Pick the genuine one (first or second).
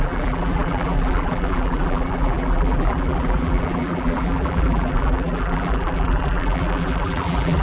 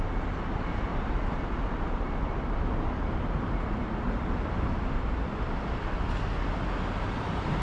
second